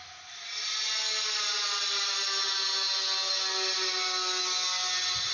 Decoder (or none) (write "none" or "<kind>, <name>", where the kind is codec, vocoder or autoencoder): none